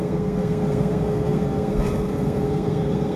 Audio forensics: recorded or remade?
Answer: remade